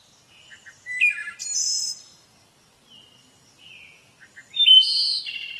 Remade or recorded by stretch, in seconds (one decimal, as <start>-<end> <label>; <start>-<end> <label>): 0.0-1.2 recorded; 1.2-4.6 remade; 4.6-5.6 recorded